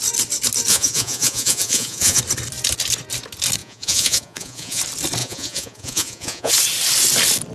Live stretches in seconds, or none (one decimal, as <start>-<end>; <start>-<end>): 0.0-0.7; 2.2-3.6; 4.8-5.2; 6.5-7.5